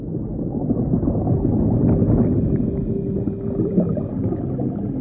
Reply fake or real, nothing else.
real